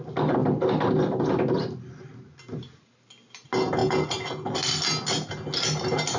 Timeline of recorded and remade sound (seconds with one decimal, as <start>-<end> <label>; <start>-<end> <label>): 0.0-6.2 recorded